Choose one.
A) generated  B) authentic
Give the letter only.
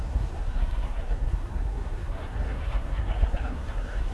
A